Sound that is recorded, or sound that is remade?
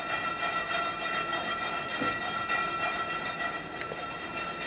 recorded